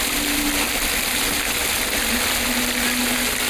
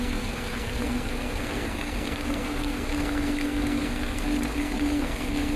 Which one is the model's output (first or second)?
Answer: second